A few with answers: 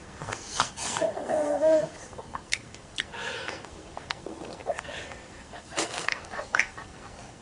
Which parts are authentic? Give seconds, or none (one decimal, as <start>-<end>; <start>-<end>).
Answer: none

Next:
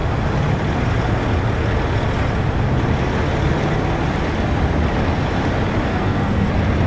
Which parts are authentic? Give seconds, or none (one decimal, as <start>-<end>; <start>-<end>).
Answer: 0.0-5.9; 6.5-6.9

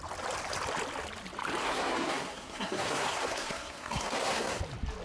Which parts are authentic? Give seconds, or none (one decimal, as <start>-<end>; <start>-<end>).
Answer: 0.0-1.6; 4.6-5.0

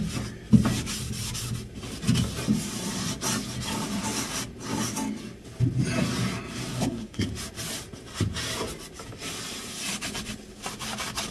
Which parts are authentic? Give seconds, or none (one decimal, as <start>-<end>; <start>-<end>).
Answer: 0.0-6.7; 7.3-11.3

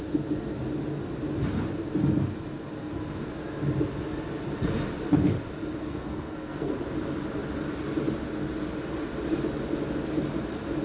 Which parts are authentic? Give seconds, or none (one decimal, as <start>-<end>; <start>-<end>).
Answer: 0.0-5.8; 6.7-10.8

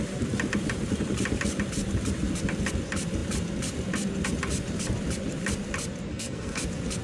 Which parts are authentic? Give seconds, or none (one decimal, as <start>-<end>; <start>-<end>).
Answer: 0.0-6.1; 6.6-7.0

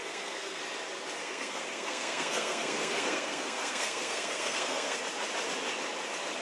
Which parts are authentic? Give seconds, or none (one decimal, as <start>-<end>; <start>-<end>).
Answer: 0.6-1.2; 5.0-6.4

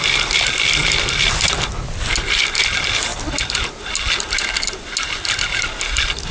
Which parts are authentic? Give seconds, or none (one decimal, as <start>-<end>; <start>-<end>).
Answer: 0.0-6.3